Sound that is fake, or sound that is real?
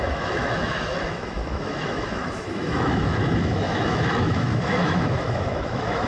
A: fake